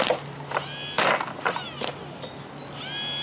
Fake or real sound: real